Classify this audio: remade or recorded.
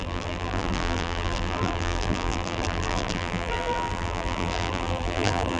remade